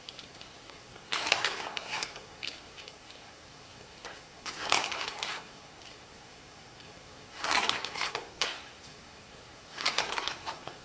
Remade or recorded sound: remade